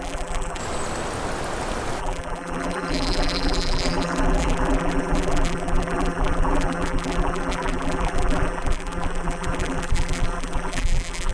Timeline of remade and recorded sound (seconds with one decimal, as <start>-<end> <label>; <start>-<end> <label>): 0.0-0.6 remade; 0.6-2.0 recorded; 2.0-11.3 remade